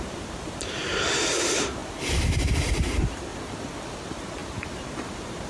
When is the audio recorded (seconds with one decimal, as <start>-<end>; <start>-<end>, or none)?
3.3-3.9